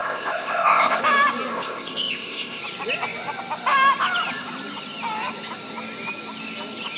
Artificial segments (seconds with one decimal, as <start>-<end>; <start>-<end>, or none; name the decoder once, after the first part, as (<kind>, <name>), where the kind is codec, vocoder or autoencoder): 0.0-1.0 (codec, ZipCodec); 1.5-2.6